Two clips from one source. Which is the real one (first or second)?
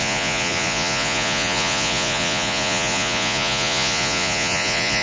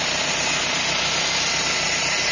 second